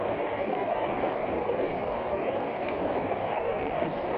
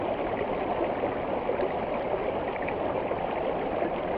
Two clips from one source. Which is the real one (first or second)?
second